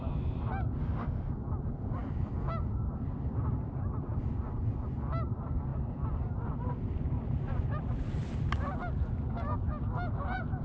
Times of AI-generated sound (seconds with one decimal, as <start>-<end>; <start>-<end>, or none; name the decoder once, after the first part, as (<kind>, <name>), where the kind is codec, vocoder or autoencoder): 0.8-1.3 (autoencoder, DAC-VAE)